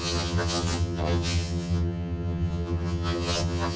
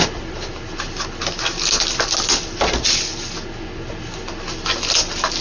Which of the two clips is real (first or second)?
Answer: second